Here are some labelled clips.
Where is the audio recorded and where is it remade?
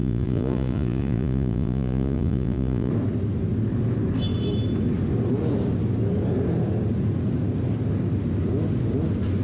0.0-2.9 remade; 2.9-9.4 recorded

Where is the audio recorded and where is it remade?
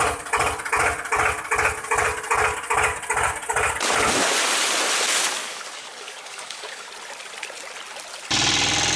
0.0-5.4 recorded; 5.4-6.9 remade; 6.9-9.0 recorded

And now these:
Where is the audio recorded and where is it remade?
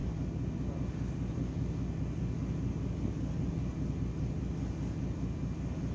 0.0-5.9 recorded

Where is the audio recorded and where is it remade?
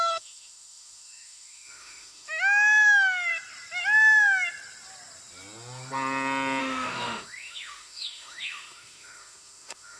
0.0-3.3 remade; 3.3-6.6 recorded; 6.6-10.0 remade